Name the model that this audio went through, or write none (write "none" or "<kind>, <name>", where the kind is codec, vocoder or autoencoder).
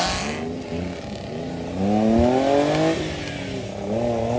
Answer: none